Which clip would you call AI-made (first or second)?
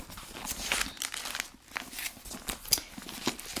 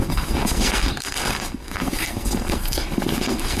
second